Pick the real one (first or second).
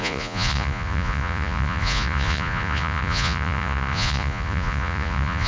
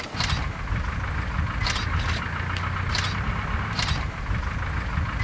second